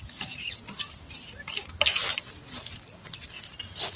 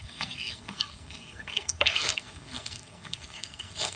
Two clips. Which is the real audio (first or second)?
first